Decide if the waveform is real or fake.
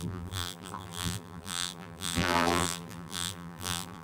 fake